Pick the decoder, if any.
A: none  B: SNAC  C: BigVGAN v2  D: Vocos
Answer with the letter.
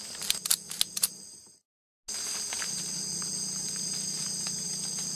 A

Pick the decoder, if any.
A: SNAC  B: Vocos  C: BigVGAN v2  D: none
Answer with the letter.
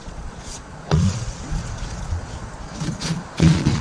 B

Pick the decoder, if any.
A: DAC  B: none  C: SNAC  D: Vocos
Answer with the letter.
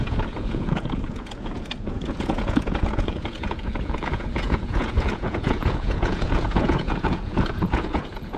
D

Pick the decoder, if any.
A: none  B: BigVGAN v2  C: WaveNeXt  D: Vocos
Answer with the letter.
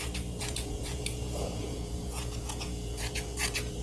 D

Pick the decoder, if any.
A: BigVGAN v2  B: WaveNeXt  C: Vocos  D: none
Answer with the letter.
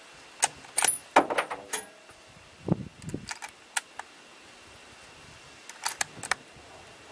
D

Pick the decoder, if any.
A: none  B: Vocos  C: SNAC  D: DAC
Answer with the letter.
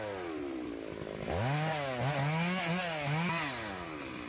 A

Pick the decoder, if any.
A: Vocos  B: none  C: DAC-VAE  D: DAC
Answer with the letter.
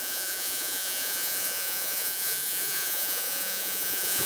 A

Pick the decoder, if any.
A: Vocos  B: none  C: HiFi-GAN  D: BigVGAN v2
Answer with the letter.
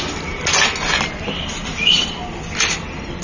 B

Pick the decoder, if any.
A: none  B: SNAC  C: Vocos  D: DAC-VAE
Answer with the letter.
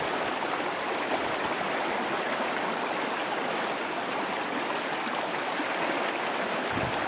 A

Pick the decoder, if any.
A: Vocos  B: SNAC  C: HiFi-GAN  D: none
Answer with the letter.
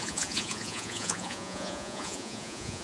A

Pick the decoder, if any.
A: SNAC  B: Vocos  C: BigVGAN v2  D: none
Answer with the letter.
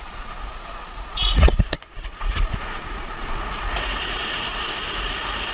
B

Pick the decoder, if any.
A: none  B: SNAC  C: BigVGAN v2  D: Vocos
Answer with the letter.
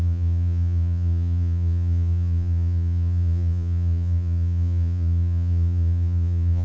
D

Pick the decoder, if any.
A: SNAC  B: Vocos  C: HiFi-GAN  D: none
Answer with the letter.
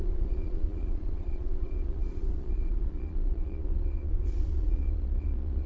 B